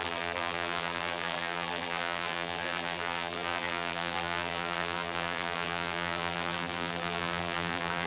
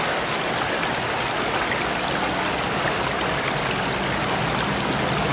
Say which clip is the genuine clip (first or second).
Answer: second